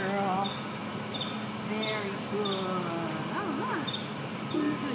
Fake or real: real